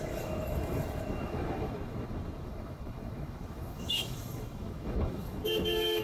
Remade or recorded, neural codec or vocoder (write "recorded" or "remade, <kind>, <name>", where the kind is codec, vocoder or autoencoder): remade, autoencoder, DAC-VAE